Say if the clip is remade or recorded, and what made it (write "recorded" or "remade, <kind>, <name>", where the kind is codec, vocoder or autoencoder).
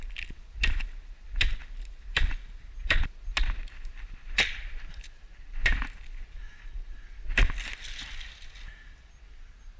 recorded